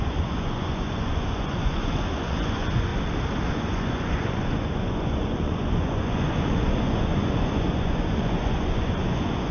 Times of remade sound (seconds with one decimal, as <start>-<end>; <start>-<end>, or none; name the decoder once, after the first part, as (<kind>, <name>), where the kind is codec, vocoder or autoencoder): 0.0-2.9 (vocoder, Vocos); 3.5-9.5